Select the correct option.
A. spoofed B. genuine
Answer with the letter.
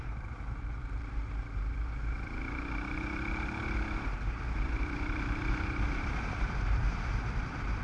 A